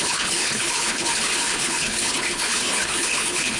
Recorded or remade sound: remade